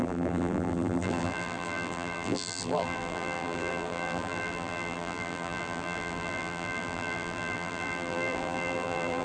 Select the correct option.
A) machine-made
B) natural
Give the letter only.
A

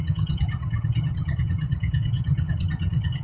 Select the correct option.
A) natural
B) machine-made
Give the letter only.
B